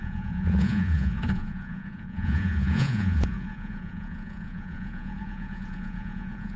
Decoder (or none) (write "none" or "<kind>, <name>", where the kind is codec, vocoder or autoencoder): vocoder, Vocos